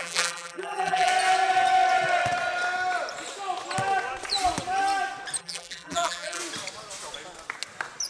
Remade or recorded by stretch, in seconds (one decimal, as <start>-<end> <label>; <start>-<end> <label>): 0.0-1.1 remade; 1.1-5.4 recorded; 5.4-6.4 remade; 6.4-8.1 recorded